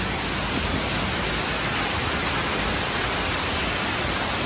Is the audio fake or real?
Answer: real